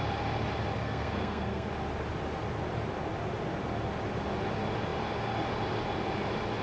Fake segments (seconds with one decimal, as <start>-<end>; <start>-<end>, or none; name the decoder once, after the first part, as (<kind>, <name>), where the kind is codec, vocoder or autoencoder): 0.8-1.7 (codec, SNAC)